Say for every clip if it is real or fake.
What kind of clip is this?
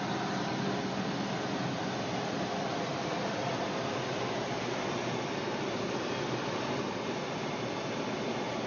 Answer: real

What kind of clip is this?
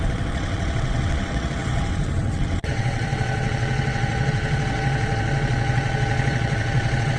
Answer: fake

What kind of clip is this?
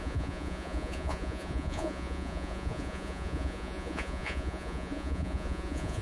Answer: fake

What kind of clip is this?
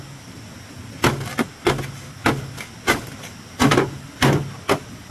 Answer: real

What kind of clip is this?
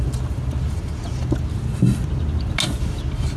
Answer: real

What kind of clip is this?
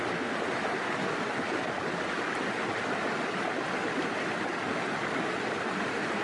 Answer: real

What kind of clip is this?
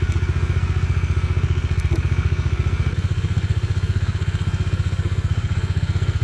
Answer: fake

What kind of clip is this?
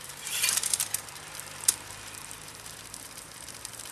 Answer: fake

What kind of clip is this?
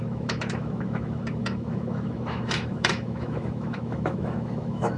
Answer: fake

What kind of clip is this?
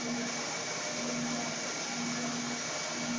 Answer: real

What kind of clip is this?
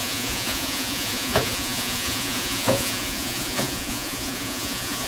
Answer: fake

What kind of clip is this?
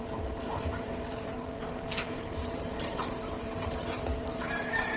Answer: fake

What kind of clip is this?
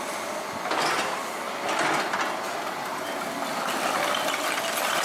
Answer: real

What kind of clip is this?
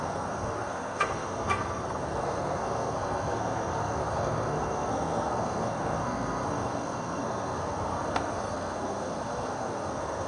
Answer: fake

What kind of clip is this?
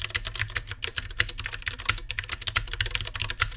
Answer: real